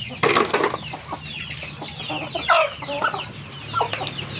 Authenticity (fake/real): real